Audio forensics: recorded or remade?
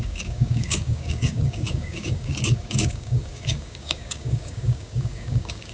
remade